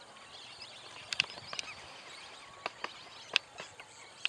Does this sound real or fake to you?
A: real